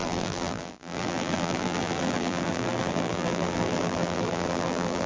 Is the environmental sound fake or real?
fake